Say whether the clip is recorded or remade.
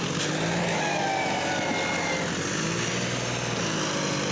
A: recorded